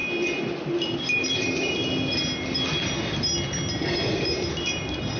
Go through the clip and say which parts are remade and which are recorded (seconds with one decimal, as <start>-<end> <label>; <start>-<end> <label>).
0.0-5.2 recorded